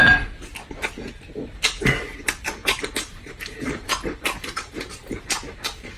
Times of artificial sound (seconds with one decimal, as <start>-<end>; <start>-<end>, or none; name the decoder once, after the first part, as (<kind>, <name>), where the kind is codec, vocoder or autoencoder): 2.6-5.2 (vocoder, BigVGAN v2)